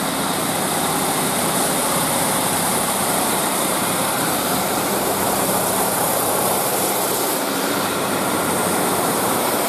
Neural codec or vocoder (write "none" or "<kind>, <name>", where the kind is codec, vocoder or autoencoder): vocoder, BigVGAN v2